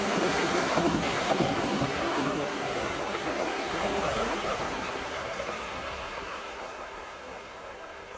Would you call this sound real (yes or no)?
no